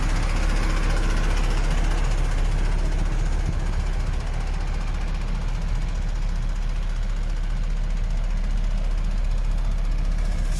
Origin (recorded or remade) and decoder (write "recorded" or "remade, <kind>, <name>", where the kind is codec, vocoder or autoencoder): recorded